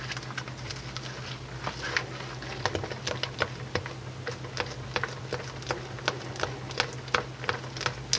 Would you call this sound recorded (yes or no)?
yes